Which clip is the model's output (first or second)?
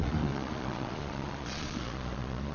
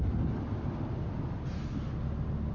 first